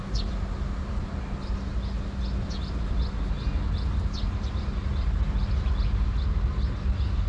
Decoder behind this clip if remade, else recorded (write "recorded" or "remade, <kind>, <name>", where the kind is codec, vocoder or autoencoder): recorded